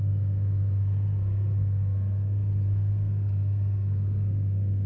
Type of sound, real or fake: fake